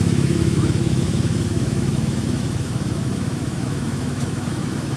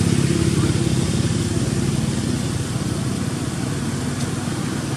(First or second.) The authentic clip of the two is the second